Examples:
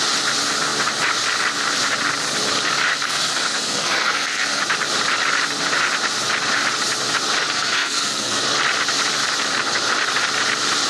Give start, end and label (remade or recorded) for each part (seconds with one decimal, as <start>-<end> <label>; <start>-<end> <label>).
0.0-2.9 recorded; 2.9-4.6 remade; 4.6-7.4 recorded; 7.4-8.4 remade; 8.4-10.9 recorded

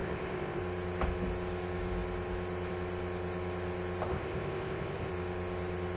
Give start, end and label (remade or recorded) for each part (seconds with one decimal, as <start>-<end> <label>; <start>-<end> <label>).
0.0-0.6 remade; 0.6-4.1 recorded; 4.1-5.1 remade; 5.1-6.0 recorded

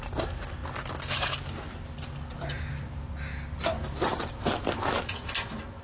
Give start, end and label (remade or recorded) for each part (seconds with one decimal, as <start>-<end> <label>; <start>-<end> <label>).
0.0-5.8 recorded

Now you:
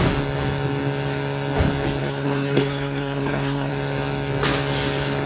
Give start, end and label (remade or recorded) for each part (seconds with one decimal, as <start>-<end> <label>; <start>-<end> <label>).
0.0-2.0 recorded; 2.0-3.7 remade; 3.7-5.3 recorded

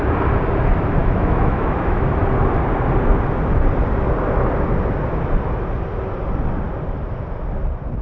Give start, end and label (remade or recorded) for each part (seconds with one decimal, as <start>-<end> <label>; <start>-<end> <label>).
0.0-1.0 recorded; 1.0-2.2 remade; 2.2-8.0 recorded

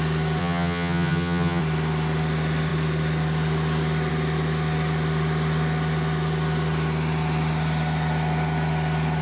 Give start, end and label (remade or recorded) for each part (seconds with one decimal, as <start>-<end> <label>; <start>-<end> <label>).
0.0-0.4 recorded; 0.4-1.6 remade; 1.6-9.2 recorded

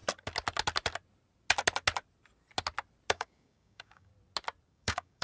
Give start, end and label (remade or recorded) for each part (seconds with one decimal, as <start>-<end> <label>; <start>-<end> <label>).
0.0-3.1 recorded; 3.1-4.1 remade; 4.1-4.7 recorded; 4.7-5.2 remade

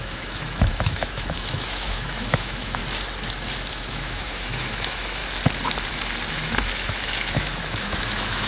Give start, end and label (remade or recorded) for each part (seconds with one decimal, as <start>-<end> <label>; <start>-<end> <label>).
0.0-2.8 remade; 2.8-3.7 recorded; 3.7-5.2 remade; 5.2-6.3 recorded; 6.3-8.5 remade